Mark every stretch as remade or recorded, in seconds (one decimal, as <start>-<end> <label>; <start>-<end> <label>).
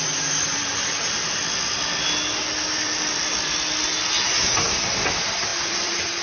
0.0-1.4 remade; 1.4-5.1 recorded; 5.1-6.2 remade